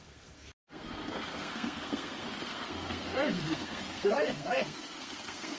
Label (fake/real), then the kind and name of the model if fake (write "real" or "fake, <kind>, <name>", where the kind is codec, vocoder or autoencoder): fake, codec, SNAC